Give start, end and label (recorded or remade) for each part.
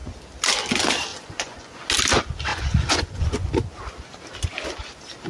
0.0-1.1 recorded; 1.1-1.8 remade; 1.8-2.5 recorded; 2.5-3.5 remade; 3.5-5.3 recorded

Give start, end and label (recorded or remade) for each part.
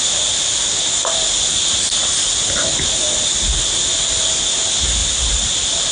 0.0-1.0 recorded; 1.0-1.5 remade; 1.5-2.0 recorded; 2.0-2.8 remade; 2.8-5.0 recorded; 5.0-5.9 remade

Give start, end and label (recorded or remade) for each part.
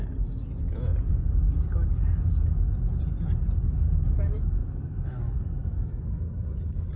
0.0-4.6 recorded; 4.6-6.0 remade; 6.0-7.0 recorded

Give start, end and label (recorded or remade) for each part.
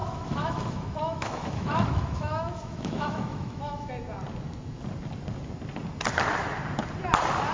0.0-3.9 remade; 3.9-7.5 recorded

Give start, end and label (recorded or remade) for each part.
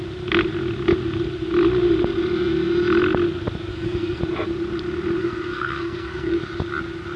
0.0-3.7 recorded; 3.7-4.2 remade; 4.2-5.2 recorded; 5.2-6.4 remade; 6.4-7.2 recorded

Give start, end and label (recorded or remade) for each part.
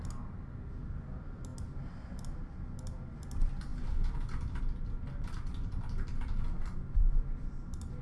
0.0-8.0 recorded